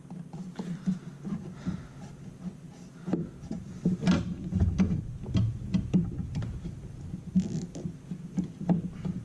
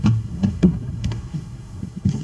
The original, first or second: first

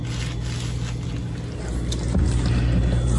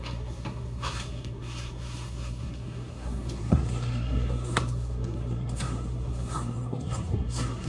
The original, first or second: first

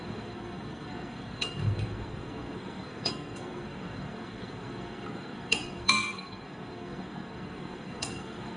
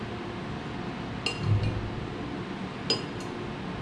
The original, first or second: second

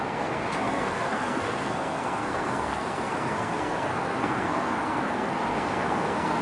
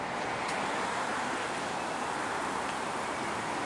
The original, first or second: second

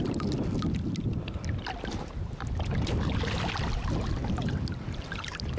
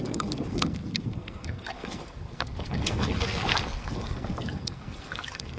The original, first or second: first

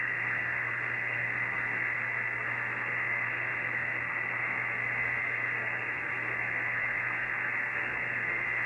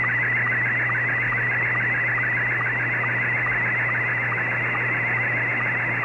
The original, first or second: second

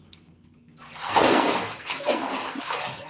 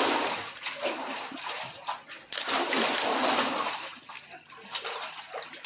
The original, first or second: second